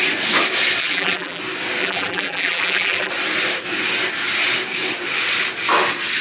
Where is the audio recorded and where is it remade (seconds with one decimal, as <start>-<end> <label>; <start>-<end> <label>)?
0.0-0.8 recorded; 0.8-1.4 remade; 1.4-1.8 recorded; 1.8-3.1 remade; 3.1-6.2 recorded